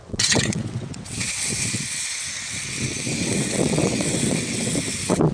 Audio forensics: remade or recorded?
remade